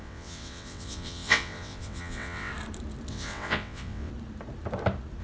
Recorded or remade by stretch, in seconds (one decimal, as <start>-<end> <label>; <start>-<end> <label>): 0.0-2.5 remade; 2.5-3.1 recorded; 3.1-4.1 remade; 4.1-5.2 recorded